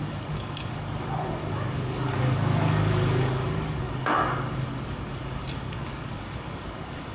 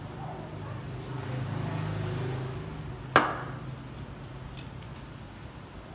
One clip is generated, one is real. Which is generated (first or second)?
first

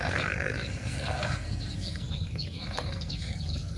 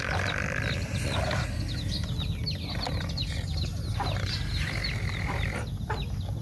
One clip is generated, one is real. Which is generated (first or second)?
first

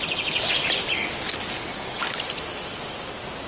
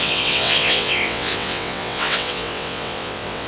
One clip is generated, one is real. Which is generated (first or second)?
second